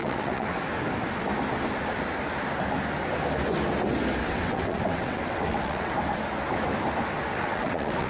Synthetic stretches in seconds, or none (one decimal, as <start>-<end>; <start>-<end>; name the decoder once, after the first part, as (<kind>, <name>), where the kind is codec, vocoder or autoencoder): 0.0-0.6 (vocoder, WaveNeXt); 4.2-5.9; 7.3-8.1